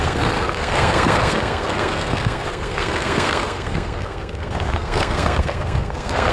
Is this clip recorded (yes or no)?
no